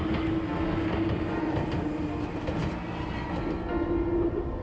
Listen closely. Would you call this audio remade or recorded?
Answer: recorded